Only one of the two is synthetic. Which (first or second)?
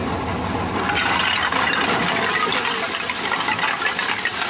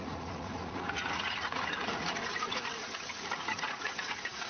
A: second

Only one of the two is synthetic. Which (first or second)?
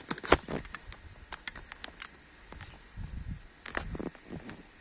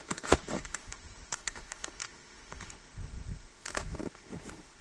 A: second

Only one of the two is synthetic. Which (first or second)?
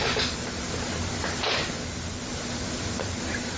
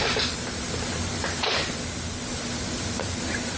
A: second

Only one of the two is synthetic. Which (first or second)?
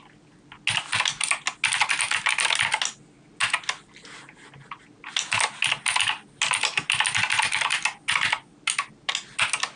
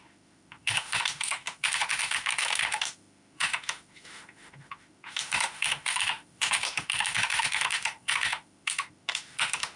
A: second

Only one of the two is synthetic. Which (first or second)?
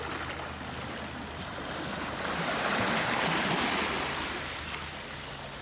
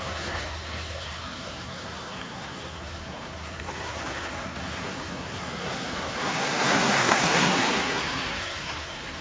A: second